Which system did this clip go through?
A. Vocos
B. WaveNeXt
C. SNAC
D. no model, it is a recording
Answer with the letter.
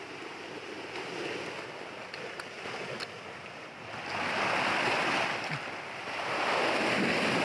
D